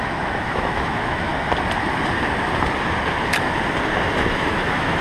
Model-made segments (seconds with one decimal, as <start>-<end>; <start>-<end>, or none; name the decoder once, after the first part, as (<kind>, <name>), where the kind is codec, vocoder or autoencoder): 0.0-1.3 (autoencoder, DAC-VAE); 4.3-5.0